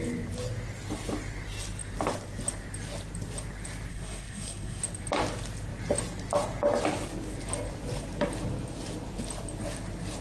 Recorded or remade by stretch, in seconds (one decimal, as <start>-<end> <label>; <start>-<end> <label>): 0.0-3.9 recorded; 3.9-4.8 remade; 4.8-10.2 recorded